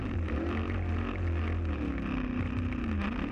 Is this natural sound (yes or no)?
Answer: yes